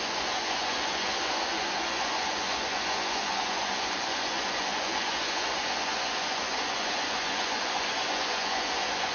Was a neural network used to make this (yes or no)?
yes